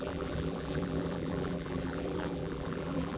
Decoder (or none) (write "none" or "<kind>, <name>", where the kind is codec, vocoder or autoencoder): vocoder, BigVGAN v2